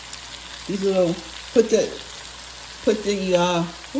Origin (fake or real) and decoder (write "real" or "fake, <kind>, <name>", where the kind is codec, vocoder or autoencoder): real